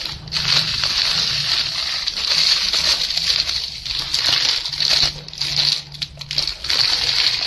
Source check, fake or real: real